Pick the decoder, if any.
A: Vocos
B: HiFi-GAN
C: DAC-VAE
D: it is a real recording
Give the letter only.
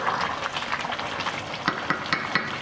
D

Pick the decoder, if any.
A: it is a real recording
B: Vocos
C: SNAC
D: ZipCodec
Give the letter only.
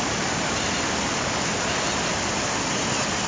A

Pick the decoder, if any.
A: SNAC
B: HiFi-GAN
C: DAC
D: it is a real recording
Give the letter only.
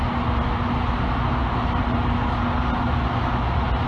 D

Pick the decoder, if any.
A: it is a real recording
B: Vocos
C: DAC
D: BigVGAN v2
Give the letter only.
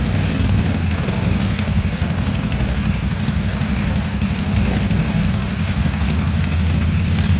C